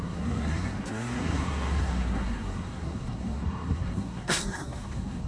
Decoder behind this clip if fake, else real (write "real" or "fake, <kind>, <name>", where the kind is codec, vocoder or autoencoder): fake, codec, SNAC